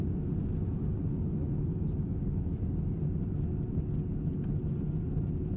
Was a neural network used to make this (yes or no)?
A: no